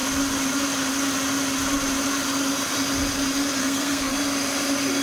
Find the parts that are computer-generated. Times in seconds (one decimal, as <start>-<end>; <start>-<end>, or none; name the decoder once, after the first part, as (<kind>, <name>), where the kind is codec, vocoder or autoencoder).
3.6-4.1 (codec, SNAC)